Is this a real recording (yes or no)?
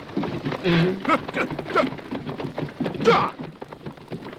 yes